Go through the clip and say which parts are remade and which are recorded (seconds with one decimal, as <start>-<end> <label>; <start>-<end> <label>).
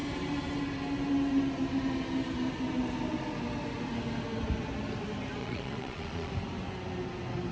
0.0-5.4 recorded; 5.4-6.3 remade; 6.3-7.5 recorded